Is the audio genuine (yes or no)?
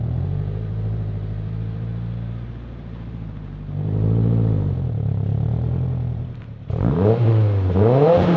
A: no